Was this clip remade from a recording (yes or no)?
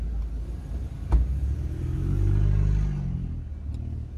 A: no